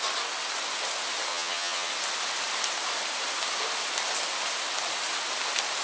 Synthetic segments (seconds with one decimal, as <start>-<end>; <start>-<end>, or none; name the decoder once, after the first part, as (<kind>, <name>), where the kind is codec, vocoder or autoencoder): 1.3-1.9 (vocoder, HiFi-GAN)